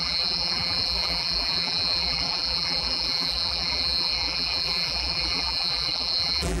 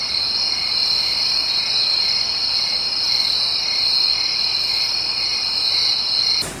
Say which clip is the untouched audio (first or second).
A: second